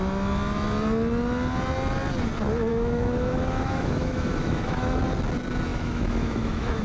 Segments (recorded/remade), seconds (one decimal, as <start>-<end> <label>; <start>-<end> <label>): 0.0-2.7 recorded; 2.7-5.0 remade; 5.0-5.7 recorded; 5.7-6.8 remade